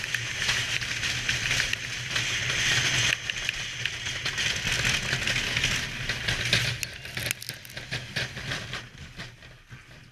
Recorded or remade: recorded